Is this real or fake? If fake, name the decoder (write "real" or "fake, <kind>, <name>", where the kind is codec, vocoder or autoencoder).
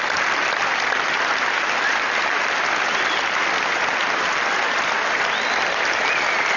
real